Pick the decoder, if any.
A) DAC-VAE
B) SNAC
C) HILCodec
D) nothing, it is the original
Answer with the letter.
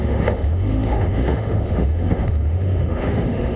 A